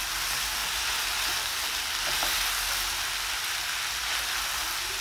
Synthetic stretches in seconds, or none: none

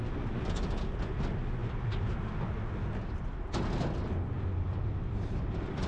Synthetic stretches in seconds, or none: none

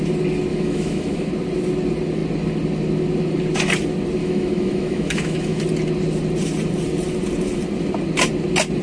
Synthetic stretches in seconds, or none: 0.5-1.3 (autoencoder, DAC-VAE); 4.2-5.6

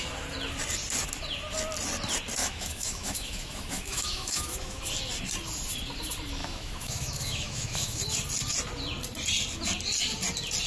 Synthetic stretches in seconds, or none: 2.4-4.8 (autoencoder, DAC-VAE); 6.4-8.0